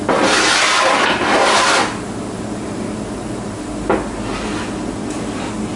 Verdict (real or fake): real